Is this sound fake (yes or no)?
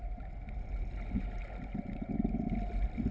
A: no